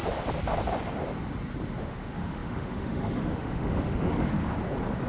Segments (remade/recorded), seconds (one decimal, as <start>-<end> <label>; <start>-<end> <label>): 0.0-1.8 recorded; 1.8-4.4 remade; 4.4-5.1 recorded